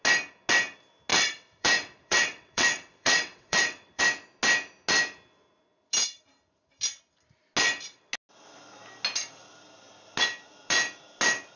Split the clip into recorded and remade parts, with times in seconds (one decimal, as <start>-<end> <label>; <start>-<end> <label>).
0.0-1.1 recorded; 1.1-4.0 remade; 4.0-11.6 recorded